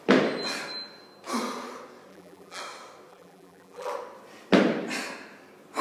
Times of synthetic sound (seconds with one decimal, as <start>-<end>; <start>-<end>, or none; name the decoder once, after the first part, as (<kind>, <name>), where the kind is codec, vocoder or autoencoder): 2.1-2.6 (vocoder, BigVGAN v2); 3.1-3.9